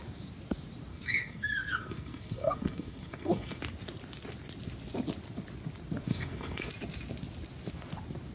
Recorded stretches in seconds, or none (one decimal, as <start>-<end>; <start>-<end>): 0.0-0.9; 3.6-6.1; 6.7-8.3